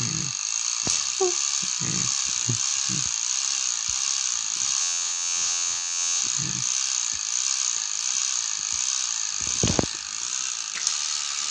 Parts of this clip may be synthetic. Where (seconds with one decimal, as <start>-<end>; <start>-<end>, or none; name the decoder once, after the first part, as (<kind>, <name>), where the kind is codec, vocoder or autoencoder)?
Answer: 4.8-6.2 (vocoder, WaveNeXt)